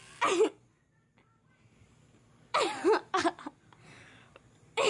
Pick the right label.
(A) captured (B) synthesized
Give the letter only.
B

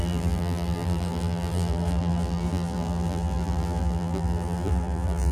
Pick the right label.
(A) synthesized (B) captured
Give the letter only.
A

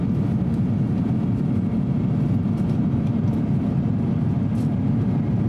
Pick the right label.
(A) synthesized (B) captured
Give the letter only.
A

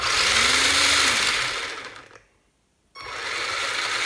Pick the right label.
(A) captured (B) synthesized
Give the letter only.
A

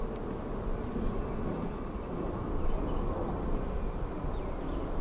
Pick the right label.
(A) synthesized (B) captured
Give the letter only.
A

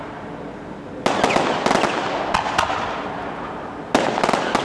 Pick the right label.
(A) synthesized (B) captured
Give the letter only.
B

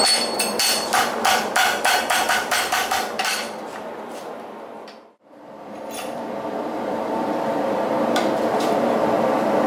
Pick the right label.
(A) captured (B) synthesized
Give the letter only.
B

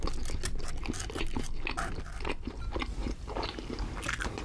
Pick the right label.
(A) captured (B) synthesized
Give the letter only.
A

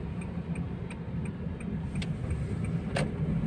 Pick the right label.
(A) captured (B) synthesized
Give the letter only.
A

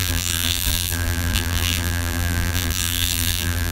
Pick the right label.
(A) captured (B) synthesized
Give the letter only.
B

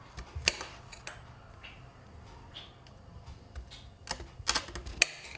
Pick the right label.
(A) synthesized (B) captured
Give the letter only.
B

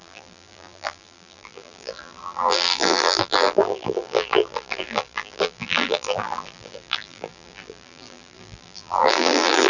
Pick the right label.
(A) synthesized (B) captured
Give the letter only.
A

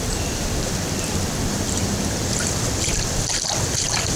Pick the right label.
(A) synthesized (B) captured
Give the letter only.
B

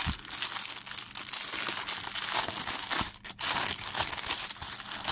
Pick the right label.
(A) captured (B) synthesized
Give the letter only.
A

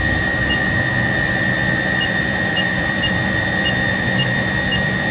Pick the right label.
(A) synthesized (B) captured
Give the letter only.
A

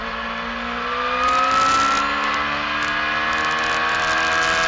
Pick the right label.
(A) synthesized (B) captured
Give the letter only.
B